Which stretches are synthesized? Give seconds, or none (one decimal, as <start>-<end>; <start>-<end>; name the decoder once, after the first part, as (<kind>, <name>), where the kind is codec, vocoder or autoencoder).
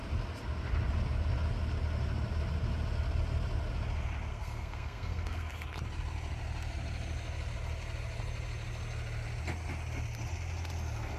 4.3-5.5 (codec, SNAC)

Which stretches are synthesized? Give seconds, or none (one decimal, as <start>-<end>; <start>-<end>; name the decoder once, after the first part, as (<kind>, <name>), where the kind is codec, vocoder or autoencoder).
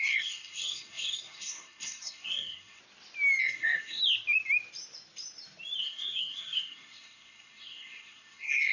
0.0-2.8 (codec, SNAC); 3.4-4.0; 5.8-8.7